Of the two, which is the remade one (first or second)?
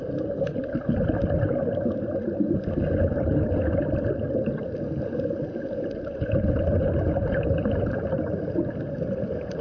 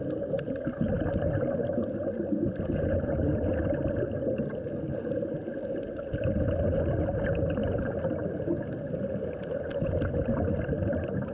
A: first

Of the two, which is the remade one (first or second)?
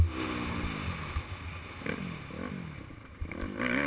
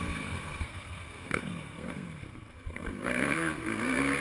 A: second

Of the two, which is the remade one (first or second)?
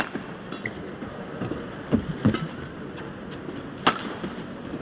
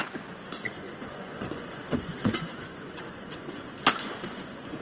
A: second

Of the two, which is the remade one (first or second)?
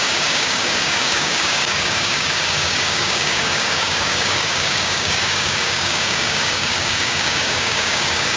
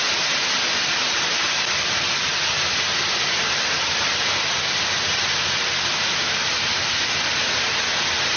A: first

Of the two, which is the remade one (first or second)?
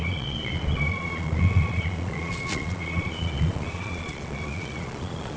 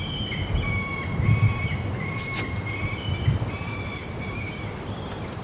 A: first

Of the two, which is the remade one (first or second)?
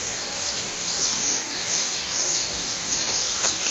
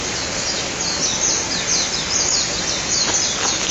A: first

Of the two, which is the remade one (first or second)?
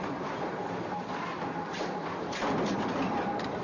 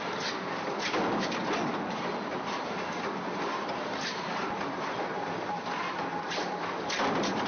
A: first